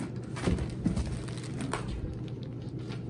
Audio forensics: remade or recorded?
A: recorded